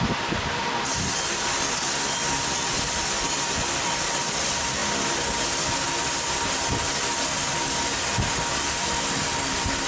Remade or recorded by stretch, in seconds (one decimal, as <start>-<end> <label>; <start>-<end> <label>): 0.0-4.8 remade; 4.8-6.3 recorded; 6.3-9.9 remade